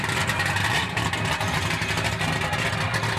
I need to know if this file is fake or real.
real